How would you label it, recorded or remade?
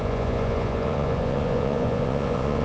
remade